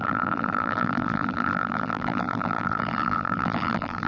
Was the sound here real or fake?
fake